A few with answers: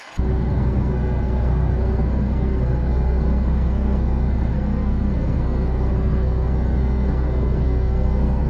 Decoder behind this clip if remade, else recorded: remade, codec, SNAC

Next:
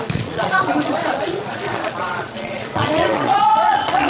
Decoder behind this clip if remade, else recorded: remade, vocoder, Vocos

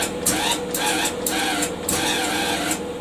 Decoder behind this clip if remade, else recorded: recorded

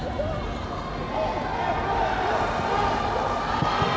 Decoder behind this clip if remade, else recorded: recorded